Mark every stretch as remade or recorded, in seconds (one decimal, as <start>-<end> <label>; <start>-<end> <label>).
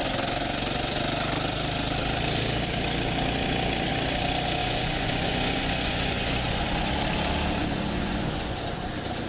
0.0-4.6 recorded; 4.6-6.9 remade; 6.9-7.6 recorded; 7.6-8.8 remade; 8.8-9.3 recorded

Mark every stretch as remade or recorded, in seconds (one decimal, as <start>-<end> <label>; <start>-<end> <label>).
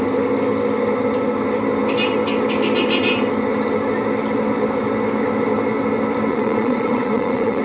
0.0-6.3 recorded; 6.3-7.6 remade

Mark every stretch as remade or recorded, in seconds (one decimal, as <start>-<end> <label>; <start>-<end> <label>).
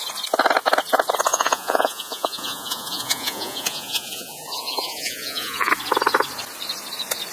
0.0-1.3 recorded; 1.3-5.7 remade; 5.7-7.3 recorded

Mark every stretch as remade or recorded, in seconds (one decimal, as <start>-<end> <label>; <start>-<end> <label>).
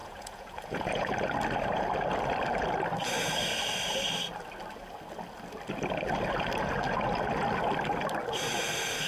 0.0-1.1 remade; 1.1-9.1 recorded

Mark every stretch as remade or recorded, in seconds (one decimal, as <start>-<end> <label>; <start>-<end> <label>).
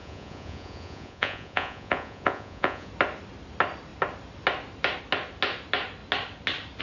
0.0-2.9 remade; 2.9-6.8 recorded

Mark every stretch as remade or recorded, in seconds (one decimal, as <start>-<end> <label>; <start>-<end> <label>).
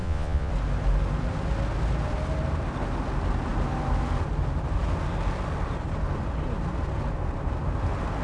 0.0-0.5 remade; 0.5-8.2 recorded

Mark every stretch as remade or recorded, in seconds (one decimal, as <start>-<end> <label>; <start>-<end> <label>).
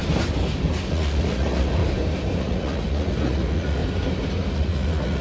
0.0-0.9 recorded; 0.9-1.8 remade; 1.8-2.4 recorded; 2.4-3.8 remade; 3.8-4.5 recorded; 4.5-5.2 remade